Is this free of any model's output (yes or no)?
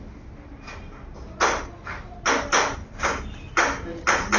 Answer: yes